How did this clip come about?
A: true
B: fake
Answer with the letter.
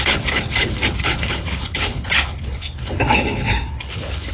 B